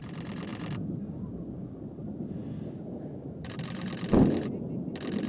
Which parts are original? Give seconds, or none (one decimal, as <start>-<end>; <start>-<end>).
0.0-5.3